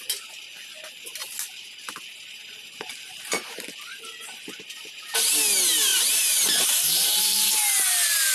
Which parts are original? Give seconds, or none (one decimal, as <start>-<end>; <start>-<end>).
0.0-5.9; 7.5-8.3